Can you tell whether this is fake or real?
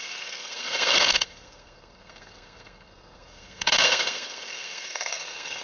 fake